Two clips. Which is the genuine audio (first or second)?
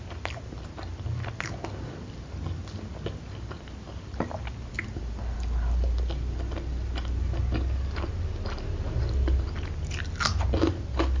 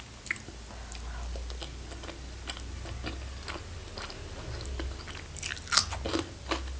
second